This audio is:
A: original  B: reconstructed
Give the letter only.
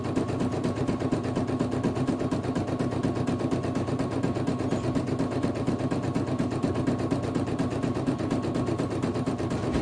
A